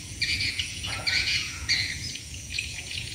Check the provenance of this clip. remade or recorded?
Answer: remade